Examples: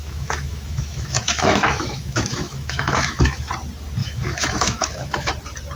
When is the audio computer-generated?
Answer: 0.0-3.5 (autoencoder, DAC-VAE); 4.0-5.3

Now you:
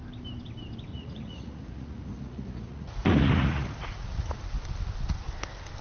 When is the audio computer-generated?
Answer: 0.9-4.4 (vocoder, Vocos)